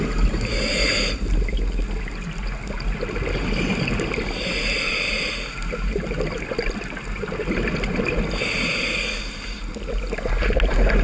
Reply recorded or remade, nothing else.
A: recorded